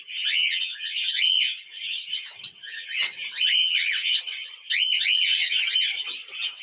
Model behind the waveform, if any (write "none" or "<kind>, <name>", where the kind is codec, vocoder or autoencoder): vocoder, WaveNeXt